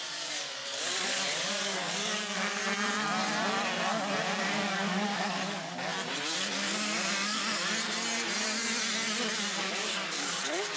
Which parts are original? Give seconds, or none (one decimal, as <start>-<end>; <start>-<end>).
2.6-4.4; 5.9-6.4; 7.4-9.6